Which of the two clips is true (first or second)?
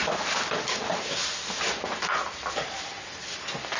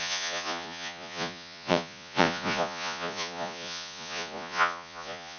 first